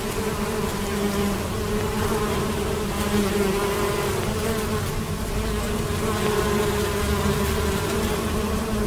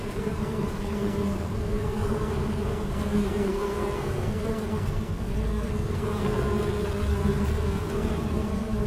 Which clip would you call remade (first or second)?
second